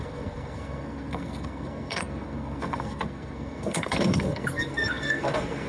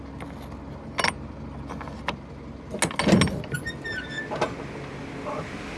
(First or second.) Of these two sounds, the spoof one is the first